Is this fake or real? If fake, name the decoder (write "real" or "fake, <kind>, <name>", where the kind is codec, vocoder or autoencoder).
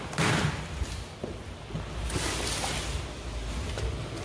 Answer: real